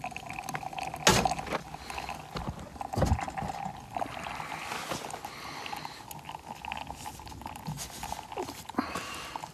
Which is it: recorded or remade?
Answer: recorded